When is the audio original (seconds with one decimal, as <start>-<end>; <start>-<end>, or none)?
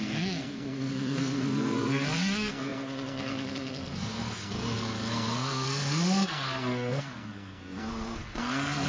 none